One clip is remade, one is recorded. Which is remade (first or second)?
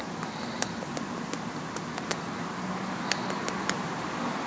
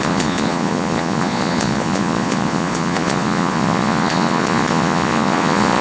second